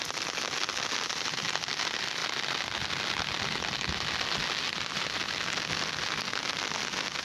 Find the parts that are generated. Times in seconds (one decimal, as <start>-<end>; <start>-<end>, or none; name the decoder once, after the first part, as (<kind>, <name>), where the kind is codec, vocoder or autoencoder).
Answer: none